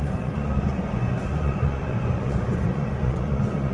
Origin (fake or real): fake